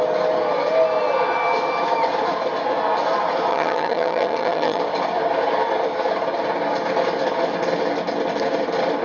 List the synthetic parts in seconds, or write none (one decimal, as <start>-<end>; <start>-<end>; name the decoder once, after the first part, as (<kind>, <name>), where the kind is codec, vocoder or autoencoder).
3.5-4.8 (vocoder, HiFi-GAN)